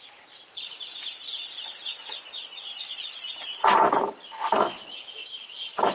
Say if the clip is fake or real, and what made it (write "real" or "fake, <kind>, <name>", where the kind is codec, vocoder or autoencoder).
real